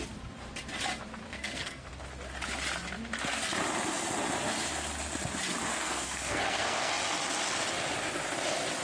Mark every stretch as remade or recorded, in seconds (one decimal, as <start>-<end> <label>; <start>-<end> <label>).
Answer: 0.0-1.3 recorded; 1.3-1.9 remade; 1.9-5.7 recorded; 5.7-6.9 remade; 6.9-8.8 recorded